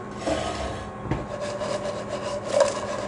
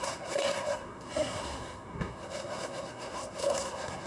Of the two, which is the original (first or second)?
first